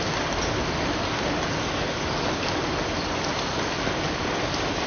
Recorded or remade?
recorded